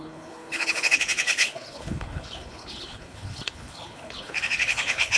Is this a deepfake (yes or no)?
yes